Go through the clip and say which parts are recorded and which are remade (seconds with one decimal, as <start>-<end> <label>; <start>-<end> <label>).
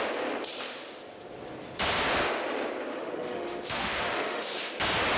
0.0-2.9 recorded; 2.9-4.7 remade; 4.7-5.2 recorded